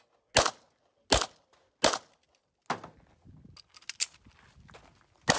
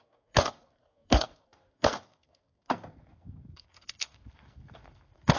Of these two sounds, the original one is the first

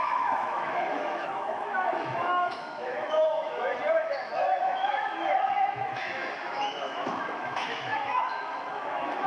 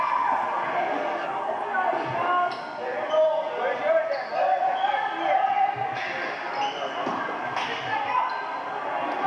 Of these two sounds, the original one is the second